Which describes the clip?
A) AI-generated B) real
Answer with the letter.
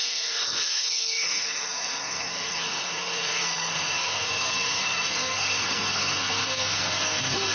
A